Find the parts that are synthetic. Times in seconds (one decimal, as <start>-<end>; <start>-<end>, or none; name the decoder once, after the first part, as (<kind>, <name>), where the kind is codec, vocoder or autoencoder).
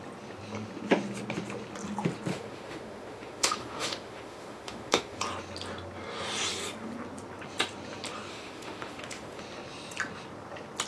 2.3-5.2 (autoencoder, DAC-VAE); 8.3-9.4